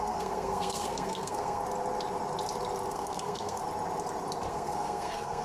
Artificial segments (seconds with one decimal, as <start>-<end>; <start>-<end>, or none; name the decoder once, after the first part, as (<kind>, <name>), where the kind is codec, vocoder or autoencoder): 0.0-1.6 (codec, SNAC); 2.9-3.6; 4.5-5.4